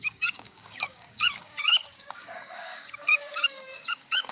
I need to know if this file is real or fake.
fake